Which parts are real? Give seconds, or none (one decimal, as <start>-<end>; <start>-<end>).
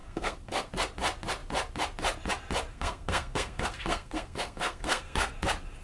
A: 0.7-2.7; 5.3-5.8